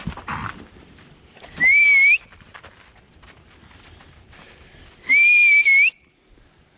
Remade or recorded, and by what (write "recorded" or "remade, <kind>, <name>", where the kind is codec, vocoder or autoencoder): recorded